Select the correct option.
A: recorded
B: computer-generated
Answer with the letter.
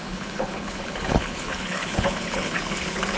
B